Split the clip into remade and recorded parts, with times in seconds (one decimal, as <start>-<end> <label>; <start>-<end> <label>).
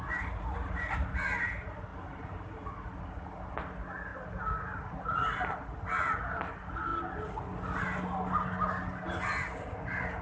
0.0-4.1 recorded; 4.1-5.8 remade; 5.8-6.9 recorded; 6.9-7.8 remade; 7.8-10.2 recorded